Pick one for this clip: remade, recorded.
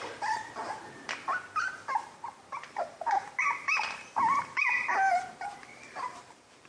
remade